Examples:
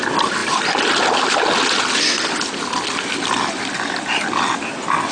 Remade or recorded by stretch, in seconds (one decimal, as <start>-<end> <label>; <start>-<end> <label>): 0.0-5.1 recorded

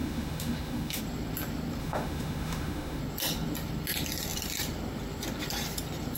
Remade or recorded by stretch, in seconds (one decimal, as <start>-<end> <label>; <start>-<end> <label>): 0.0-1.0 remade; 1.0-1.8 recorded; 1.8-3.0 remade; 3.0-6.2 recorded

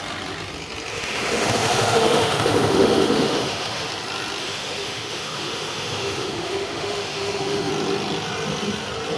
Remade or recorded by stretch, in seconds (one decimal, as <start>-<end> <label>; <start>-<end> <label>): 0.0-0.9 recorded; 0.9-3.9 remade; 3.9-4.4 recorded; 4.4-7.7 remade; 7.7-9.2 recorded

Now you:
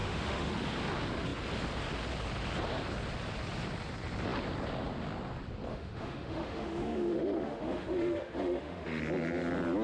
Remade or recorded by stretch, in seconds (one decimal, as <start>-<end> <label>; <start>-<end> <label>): 0.0-0.5 remade; 0.5-5.7 recorded; 5.7-9.0 remade; 9.0-9.8 recorded

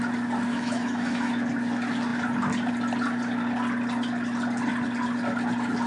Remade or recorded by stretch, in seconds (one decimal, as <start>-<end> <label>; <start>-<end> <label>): 0.0-0.5 recorded; 0.5-1.3 remade; 1.3-5.9 recorded

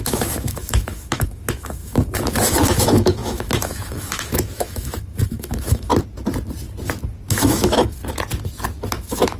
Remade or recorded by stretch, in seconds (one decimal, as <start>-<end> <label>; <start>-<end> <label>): 0.0-5.9 remade; 5.9-7.3 recorded; 7.3-8.0 remade; 8.0-8.9 recorded; 8.9-9.4 remade

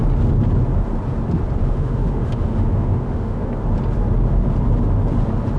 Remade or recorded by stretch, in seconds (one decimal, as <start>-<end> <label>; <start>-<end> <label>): 0.0-1.6 recorded; 1.6-3.5 remade; 3.5-5.6 recorded

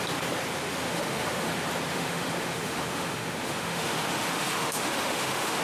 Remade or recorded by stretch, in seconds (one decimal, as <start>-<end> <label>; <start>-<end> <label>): 0.0-0.8 recorded; 0.8-1.5 remade; 1.5-1.9 recorded; 1.9-5.6 remade